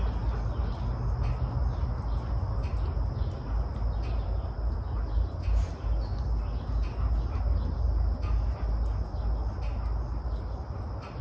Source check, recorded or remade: recorded